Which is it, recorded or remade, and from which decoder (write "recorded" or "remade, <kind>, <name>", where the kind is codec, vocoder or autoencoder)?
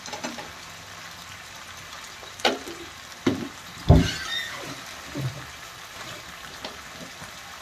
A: remade, vocoder, BigVGAN v2